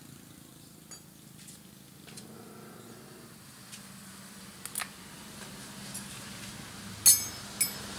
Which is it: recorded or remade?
recorded